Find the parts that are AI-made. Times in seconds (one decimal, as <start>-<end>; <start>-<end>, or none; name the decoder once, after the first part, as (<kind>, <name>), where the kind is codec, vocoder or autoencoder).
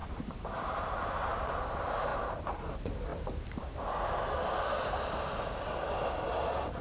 0.0-1.2 (vocoder, BigVGAN v2); 3.1-4.1